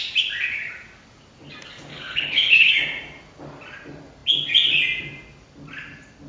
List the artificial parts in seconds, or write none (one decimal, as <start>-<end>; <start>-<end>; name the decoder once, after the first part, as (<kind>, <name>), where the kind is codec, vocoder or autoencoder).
1.9-2.7 (codec, HILCodec)